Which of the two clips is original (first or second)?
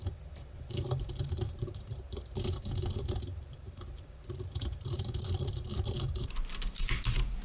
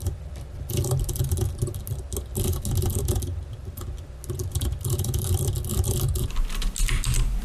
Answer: second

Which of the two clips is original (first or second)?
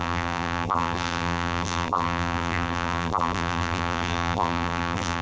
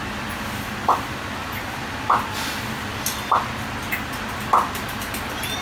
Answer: second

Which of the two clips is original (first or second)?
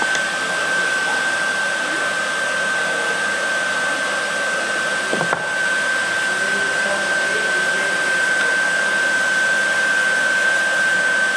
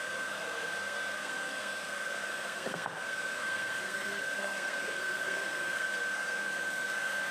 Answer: first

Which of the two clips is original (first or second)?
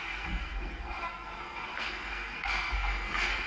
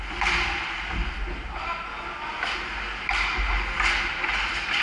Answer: second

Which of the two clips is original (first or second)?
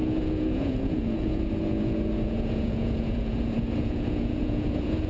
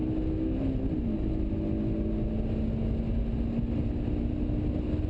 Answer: second